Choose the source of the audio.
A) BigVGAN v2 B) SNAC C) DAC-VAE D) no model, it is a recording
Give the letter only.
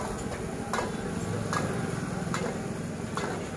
D